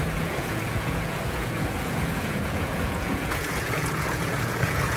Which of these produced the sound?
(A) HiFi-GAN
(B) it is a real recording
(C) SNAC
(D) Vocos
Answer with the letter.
D